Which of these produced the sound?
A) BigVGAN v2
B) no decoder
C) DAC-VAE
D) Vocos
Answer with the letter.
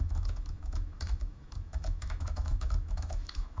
C